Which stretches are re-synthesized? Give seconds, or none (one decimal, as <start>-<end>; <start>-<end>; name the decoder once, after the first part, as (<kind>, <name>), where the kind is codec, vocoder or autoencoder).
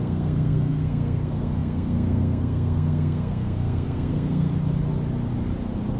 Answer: 0.0-4.5 (codec, SNAC)